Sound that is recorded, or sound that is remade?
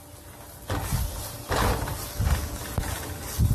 recorded